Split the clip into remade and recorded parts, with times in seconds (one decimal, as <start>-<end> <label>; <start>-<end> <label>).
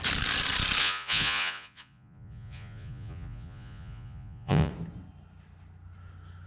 0.0-0.8 recorded; 0.8-4.7 remade; 4.7-6.5 recorded